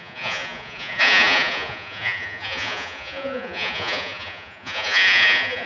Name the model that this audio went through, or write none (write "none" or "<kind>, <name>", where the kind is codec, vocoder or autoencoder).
vocoder, Vocos